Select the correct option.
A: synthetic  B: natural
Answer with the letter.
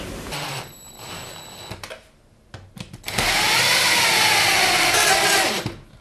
B